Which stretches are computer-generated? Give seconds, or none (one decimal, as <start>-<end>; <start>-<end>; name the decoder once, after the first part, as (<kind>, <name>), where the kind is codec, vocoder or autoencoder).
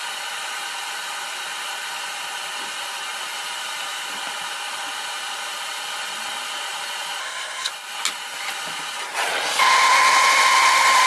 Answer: 7.2-7.7 (codec, SNAC)